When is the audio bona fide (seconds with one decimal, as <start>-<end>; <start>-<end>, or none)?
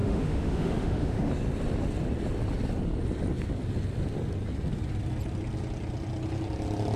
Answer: 1.3-7.0